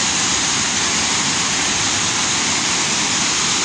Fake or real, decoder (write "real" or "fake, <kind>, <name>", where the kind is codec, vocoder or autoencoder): real